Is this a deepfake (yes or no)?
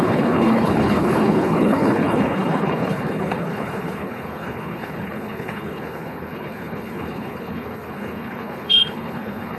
yes